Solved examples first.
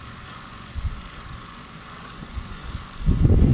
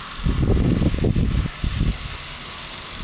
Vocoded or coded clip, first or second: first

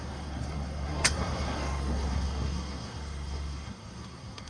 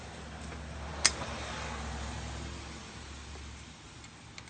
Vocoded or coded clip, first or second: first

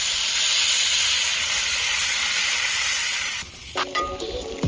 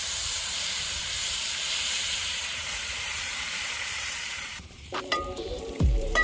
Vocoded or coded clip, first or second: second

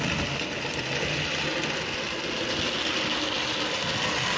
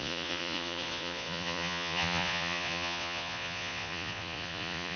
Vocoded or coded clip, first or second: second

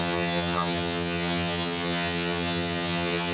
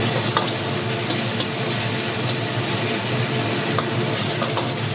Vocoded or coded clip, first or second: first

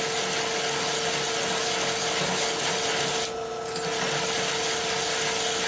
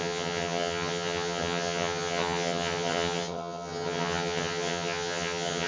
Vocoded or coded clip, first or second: second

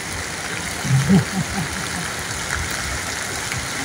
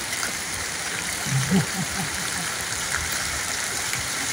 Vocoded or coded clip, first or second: second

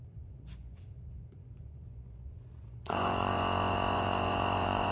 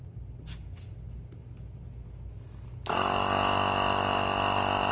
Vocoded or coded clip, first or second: first